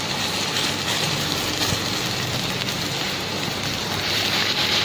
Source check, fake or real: fake